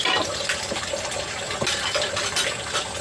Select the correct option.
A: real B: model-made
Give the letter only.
A